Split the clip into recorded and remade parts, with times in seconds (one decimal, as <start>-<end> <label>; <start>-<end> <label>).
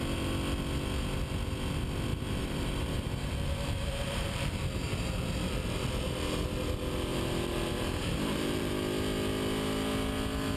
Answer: 0.0-2.1 recorded; 2.1-4.6 remade; 4.6-7.1 recorded; 7.1-8.7 remade; 8.7-10.6 recorded